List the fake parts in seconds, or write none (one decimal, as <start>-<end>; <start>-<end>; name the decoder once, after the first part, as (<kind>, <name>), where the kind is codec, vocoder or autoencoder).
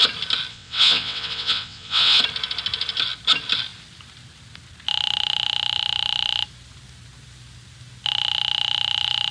0.5-2.2 (vocoder, WaveNeXt)